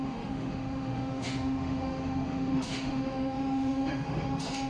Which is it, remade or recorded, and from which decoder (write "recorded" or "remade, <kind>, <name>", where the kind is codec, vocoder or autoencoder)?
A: remade, autoencoder, DAC-VAE